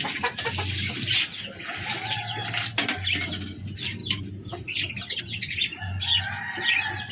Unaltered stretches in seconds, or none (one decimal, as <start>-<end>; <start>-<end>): 0.0-7.1